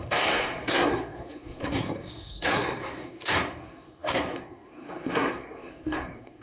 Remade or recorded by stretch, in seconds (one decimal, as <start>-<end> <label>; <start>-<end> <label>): 0.0-6.4 remade